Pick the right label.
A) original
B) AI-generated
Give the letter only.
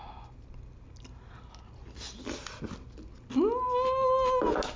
A